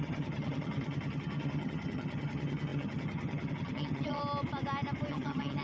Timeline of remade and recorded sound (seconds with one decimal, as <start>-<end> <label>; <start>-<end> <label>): 0.0-4.2 remade; 4.2-5.1 recorded; 5.1-5.6 remade